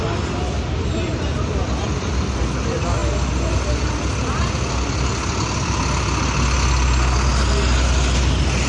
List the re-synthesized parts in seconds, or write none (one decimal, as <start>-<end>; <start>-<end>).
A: none